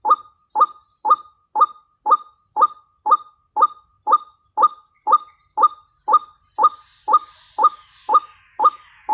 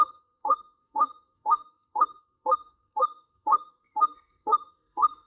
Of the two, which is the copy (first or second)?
second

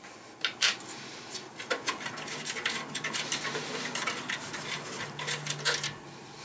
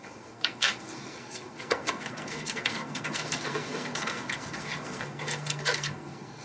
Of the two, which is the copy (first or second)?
second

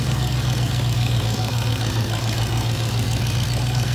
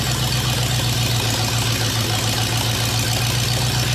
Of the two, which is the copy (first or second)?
first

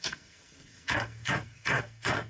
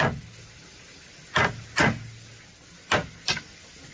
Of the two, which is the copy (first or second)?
first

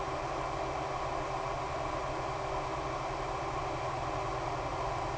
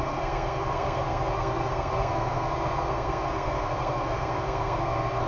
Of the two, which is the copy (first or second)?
second